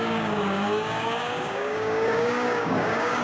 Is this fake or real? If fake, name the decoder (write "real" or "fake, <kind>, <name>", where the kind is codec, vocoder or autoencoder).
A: fake, codec, DAC